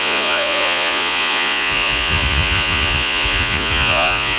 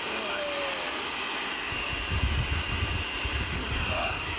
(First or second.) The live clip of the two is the second